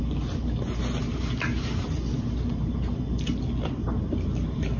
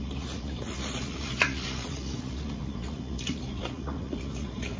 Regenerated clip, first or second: second